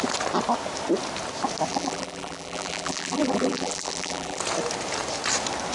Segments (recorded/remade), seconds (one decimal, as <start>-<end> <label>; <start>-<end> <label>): 0.0-1.7 recorded; 1.7-4.4 remade; 4.4-5.7 recorded